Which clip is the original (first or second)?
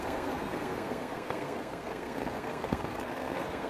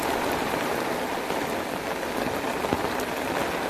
second